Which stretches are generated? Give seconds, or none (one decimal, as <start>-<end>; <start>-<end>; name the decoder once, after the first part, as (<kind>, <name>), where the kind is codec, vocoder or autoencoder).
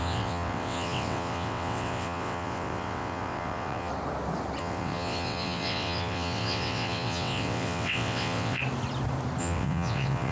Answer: 0.0-3.9 (vocoder, WaveNeXt); 4.6-8.6; 9.4-10.3